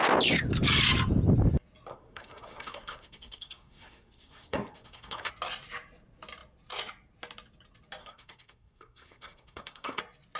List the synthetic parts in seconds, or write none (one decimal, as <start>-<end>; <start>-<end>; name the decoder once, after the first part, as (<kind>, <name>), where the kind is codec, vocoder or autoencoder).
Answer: 1.9-5.3 (codec, SNAC); 8.0-10.0